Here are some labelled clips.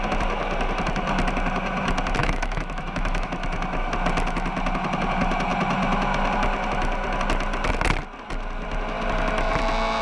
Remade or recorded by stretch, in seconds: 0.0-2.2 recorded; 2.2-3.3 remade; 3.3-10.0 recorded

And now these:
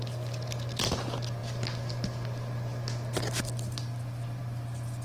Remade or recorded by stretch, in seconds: 0.0-5.0 recorded